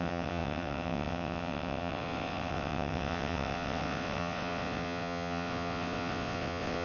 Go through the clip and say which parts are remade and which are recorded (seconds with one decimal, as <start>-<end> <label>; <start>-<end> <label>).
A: 0.0-6.8 remade